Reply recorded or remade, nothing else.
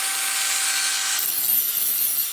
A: recorded